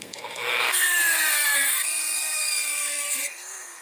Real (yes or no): no